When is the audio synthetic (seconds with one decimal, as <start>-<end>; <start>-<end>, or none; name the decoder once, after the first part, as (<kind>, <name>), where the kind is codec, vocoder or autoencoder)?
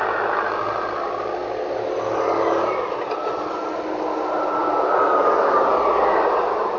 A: none